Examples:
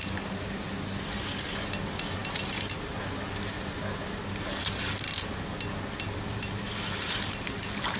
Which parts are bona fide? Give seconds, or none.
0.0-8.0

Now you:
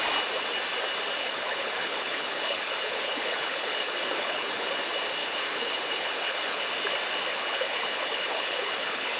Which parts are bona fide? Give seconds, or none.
0.0-1.2; 4.7-5.2; 6.7-7.3

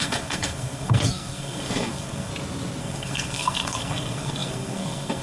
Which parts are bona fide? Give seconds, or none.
2.3-2.8

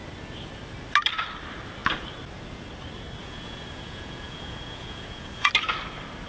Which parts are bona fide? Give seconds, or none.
0.0-3.2; 5.5-6.3

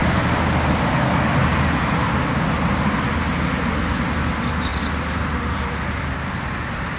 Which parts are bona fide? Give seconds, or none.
0.0-7.0

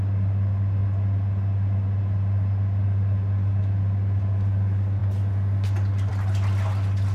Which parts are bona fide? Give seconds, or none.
0.0-7.1

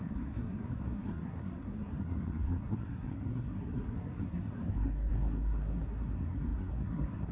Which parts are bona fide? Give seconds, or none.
none

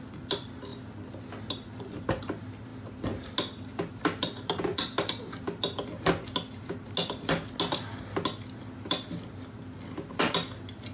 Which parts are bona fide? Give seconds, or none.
0.0-10.9